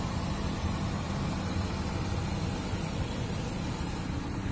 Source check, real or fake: fake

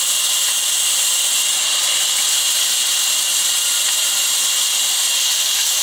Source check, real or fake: real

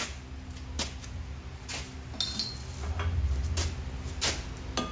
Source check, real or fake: real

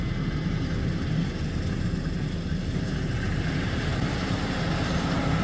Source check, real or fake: real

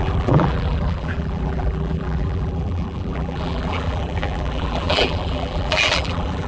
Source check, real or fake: fake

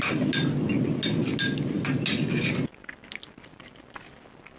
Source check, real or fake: real